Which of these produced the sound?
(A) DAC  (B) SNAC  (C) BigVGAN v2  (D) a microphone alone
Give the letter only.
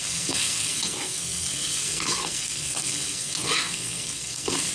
B